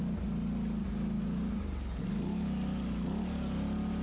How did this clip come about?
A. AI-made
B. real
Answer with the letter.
B